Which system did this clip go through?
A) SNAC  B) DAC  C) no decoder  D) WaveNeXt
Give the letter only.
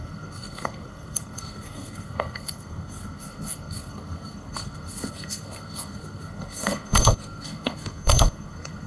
A